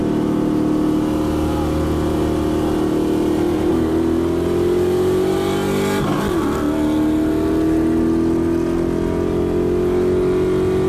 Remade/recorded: recorded